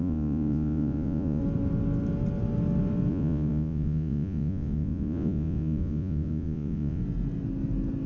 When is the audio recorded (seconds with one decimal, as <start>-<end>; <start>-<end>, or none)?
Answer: 1.4-3.1; 7.0-8.1